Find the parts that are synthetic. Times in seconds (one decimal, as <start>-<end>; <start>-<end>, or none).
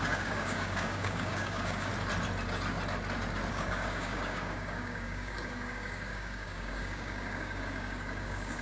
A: 0.0-1.9; 3.5-8.6